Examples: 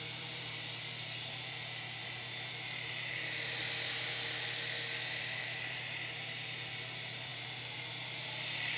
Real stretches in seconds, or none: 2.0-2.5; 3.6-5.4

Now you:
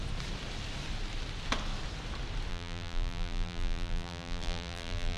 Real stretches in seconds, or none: 0.0-2.5

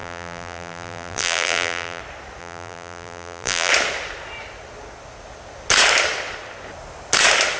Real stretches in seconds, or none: 2.0-2.4; 3.7-7.6